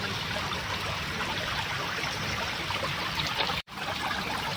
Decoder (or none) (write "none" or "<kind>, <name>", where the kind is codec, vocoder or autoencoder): vocoder, BigVGAN v2